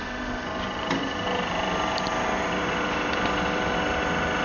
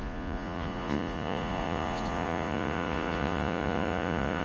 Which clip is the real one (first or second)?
first